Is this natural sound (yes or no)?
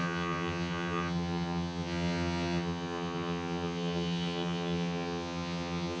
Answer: no